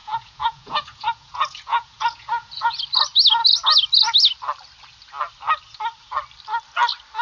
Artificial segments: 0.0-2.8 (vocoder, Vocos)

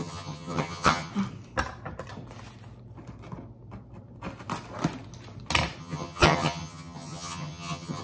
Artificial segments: 0.0-1.1 (vocoder, HiFi-GAN); 5.8-8.0

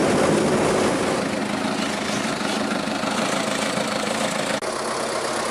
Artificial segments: 1.4-4.2 (vocoder, BigVGAN v2)

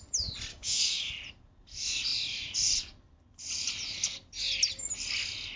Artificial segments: 0.5-1.1 (codec, DAC)

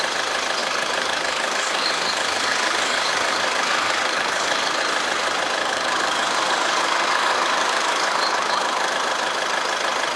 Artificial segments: 0.6-4.8 (codec, DAC); 5.6-8.9